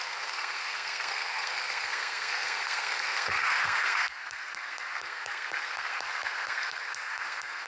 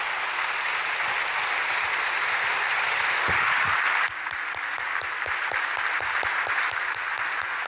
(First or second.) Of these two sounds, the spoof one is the first